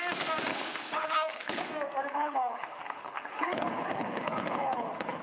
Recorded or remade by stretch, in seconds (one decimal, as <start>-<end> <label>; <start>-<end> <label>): 0.0-0.5 recorded; 0.5-1.6 remade; 1.6-2.1 recorded; 2.1-5.2 remade